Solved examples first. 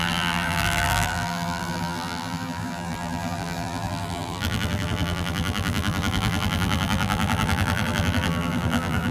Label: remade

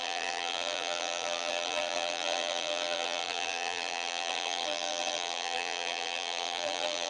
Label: remade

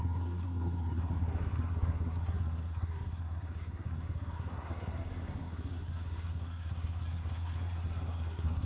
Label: remade